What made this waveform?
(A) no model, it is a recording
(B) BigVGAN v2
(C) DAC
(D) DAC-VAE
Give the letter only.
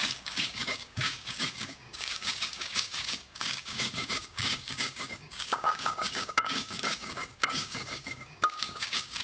C